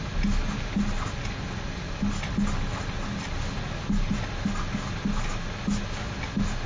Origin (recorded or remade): recorded